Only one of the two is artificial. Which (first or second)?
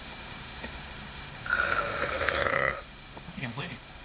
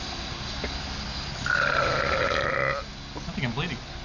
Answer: first